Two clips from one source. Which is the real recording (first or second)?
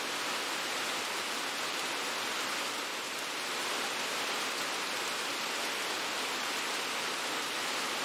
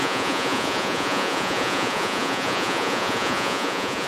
first